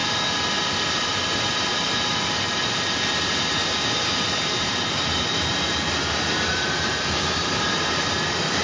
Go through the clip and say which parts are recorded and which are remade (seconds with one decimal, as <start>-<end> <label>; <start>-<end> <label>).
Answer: 0.0-0.6 recorded; 0.6-1.7 remade; 1.7-6.5 recorded; 6.5-8.6 remade